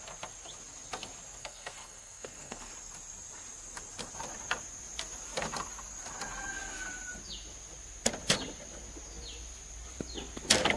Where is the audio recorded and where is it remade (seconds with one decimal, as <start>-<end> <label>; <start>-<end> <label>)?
0.0-1.4 recorded; 1.4-2.7 remade; 2.7-10.8 recorded